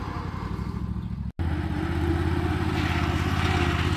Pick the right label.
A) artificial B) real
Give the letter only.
B